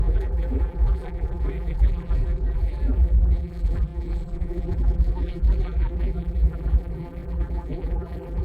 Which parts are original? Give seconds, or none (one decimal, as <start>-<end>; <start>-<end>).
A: none